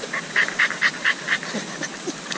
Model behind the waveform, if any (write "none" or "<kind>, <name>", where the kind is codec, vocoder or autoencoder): none